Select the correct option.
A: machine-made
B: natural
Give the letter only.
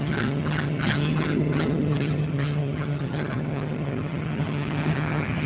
A